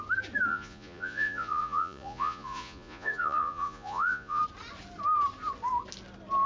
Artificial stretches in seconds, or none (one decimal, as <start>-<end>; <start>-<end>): 0.5-4.4